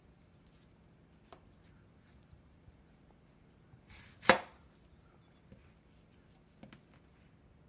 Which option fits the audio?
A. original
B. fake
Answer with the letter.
A